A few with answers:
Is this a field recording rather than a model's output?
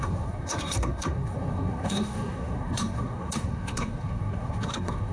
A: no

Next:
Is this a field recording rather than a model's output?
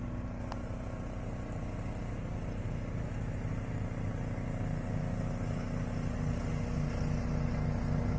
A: yes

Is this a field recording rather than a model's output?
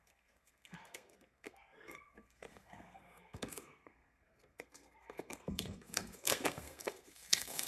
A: no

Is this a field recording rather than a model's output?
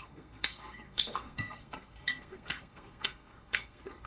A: no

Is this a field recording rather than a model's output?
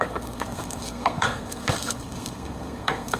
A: no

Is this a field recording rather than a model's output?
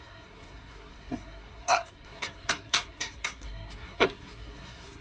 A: no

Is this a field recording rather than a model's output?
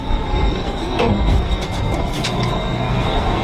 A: no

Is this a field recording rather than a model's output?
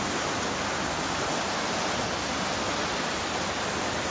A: yes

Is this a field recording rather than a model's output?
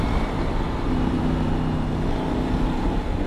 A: yes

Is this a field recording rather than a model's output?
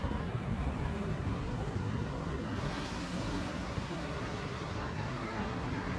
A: no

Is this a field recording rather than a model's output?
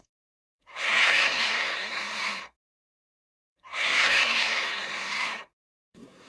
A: no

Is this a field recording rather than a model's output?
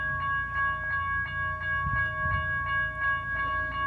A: yes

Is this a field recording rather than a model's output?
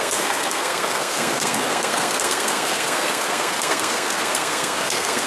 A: no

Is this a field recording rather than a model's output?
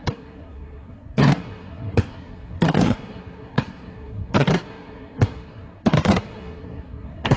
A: no